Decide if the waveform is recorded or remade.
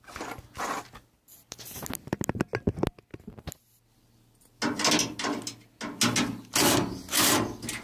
recorded